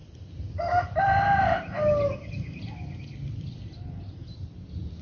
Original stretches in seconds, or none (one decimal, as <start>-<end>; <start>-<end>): 0.0-3.0; 4.2-5.0